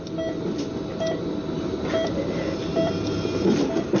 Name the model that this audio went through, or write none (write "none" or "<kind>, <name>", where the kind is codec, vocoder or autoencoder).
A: none